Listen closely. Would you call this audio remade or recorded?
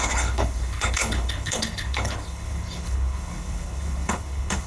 remade